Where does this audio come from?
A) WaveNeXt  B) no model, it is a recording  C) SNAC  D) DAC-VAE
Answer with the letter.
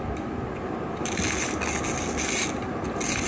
B